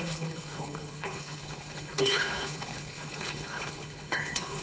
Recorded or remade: remade